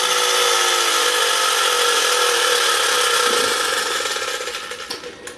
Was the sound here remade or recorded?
recorded